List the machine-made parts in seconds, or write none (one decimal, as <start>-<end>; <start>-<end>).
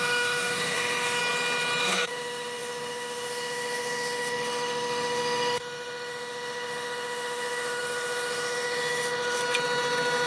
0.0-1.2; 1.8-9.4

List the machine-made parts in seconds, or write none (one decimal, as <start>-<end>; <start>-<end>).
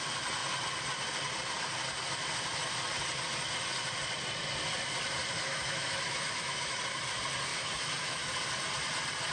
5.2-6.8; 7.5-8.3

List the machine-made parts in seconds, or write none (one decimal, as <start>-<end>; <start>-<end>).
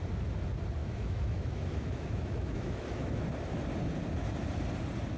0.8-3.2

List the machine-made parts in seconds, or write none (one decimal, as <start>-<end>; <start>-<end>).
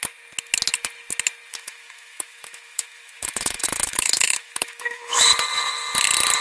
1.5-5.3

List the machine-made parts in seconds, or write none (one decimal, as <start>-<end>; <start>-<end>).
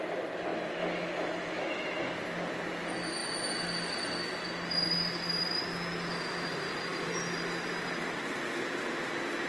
0.5-2.0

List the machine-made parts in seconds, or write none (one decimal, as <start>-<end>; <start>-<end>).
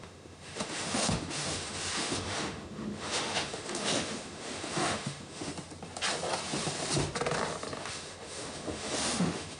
0.0-5.5; 7.8-9.6